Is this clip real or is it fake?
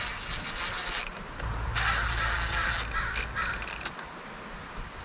real